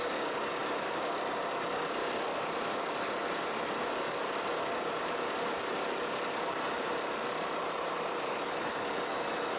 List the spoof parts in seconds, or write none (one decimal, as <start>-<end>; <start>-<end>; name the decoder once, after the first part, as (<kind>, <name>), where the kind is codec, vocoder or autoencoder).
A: none